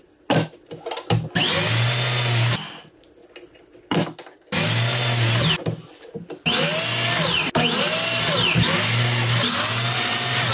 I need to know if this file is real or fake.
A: real